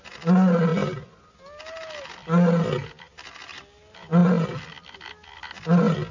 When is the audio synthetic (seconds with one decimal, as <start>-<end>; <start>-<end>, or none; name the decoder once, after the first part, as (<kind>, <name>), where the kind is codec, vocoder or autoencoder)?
none